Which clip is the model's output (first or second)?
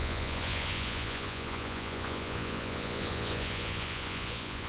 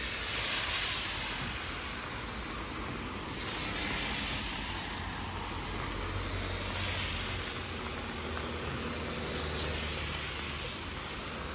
first